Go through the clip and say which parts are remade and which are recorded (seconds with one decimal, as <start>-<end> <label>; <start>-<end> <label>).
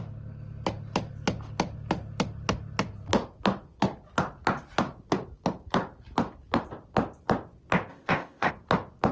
0.0-7.9 recorded; 7.9-8.5 remade; 8.5-9.1 recorded